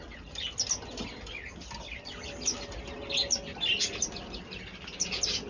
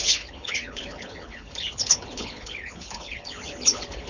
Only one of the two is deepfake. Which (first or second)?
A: second